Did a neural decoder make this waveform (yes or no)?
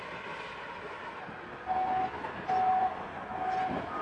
no